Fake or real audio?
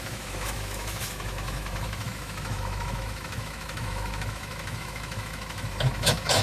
fake